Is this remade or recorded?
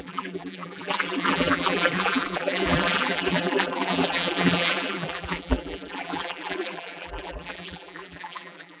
remade